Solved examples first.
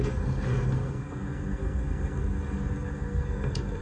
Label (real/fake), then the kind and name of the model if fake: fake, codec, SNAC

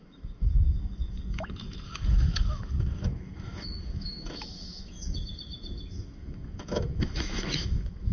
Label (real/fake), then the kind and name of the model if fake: fake, autoencoder, DAC-VAE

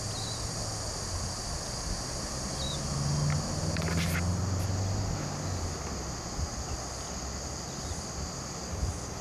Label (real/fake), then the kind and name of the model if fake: real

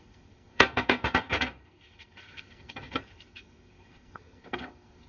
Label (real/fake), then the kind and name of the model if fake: fake, codec, SNAC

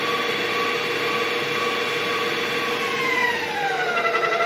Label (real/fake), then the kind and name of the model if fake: real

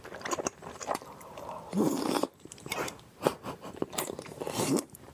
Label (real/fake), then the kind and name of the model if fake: fake, vocoder, BigVGAN v2